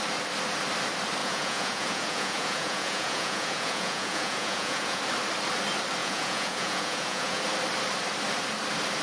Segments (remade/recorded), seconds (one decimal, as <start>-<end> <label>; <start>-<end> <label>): 0.0-1.2 recorded; 1.2-5.0 remade; 5.0-6.0 recorded; 6.0-7.4 remade; 7.4-9.0 recorded